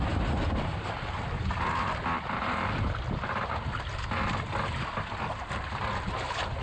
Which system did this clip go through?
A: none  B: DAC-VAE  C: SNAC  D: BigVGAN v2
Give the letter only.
A